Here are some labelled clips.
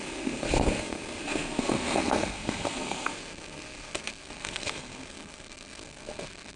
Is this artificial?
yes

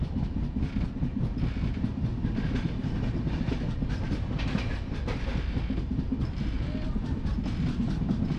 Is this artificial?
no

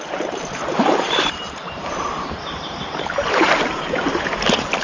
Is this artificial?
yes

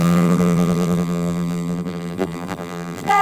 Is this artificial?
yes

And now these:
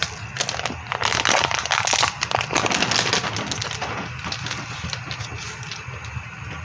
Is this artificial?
no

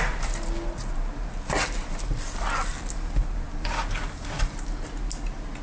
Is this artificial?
no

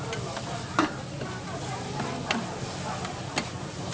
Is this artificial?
no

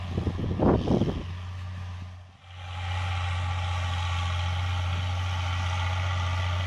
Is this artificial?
no